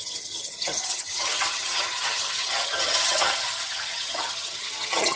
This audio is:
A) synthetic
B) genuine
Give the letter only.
A